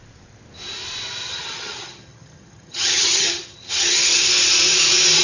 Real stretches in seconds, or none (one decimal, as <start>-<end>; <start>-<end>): 0.0-1.2; 4.3-5.2